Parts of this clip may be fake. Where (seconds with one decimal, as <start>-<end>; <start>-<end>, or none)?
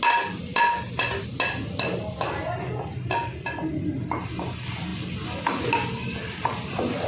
none